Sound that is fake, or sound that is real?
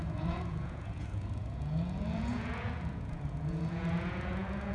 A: fake